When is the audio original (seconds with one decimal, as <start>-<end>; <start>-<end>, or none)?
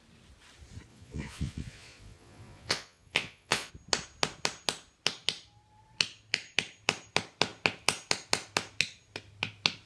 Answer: 0.0-0.9; 3.7-9.9